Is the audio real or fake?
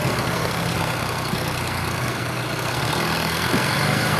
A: fake